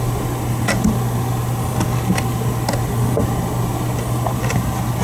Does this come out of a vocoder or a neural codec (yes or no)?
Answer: no